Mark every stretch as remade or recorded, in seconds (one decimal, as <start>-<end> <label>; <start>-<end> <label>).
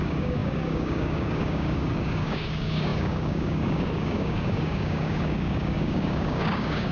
0.0-6.9 remade